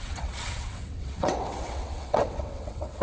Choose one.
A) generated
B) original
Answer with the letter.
A